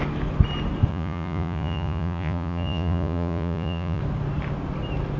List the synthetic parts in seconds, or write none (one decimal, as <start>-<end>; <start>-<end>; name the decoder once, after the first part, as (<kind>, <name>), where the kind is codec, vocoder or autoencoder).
0.9-4.0 (vocoder, Vocos)